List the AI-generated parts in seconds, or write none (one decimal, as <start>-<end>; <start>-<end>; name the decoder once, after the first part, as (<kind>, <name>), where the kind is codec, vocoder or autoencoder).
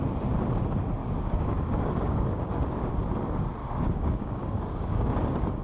1.0-2.9 (codec, DAC); 3.6-5.6